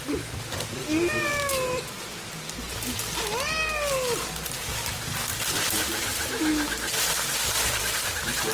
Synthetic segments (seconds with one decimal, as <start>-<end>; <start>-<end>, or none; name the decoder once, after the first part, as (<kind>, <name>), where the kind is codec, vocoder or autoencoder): 0.0-1.3 (vocoder, BigVGAN v2); 4.6-5.3; 5.8-6.5; 7.1-8.5